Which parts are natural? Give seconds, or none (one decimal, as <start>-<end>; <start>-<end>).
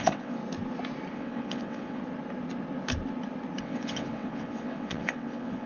0.4-1.1; 2.0-3.6